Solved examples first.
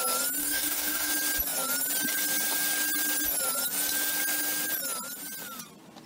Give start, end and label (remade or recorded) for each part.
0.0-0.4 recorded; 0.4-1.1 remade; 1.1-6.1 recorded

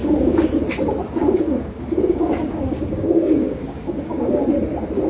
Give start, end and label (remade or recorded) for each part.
0.0-0.5 remade; 0.5-1.2 recorded; 1.2-4.3 remade; 4.3-5.1 recorded